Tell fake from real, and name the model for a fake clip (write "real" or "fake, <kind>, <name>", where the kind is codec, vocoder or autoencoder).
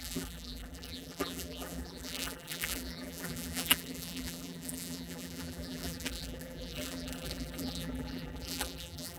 fake, vocoder, BigVGAN v2